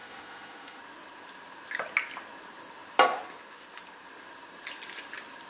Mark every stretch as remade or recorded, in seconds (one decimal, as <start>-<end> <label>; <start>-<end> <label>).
0.0-0.8 remade; 0.8-5.5 recorded